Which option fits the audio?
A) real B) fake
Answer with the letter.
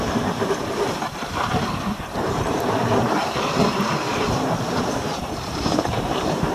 B